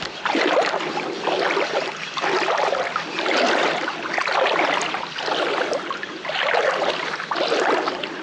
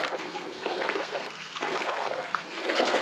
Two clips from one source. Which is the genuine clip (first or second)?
first